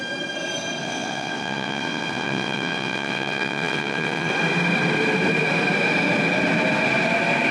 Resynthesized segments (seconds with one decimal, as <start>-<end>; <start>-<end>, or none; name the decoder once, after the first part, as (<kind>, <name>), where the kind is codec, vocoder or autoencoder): 0.8-4.3 (vocoder, WaveNeXt)